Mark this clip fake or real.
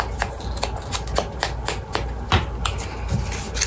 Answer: real